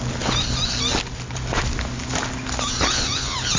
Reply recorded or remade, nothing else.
recorded